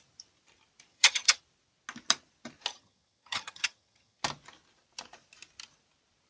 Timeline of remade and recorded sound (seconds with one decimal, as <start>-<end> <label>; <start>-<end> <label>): 0.0-0.9 recorded; 0.9-1.4 remade; 1.4-2.7 recorded; 2.7-4.2 remade; 4.2-6.3 recorded